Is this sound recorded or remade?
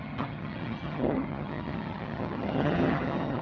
remade